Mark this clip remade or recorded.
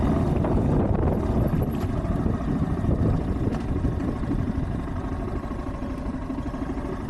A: recorded